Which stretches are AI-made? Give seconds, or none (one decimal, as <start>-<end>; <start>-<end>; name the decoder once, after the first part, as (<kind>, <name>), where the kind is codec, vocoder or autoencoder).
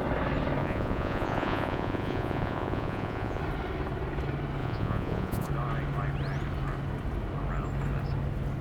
0.6-3.4 (vocoder, Vocos); 4.6-5.5